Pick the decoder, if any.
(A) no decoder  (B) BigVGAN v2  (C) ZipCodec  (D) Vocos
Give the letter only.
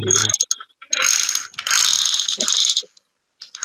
A